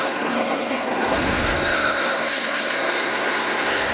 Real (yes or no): no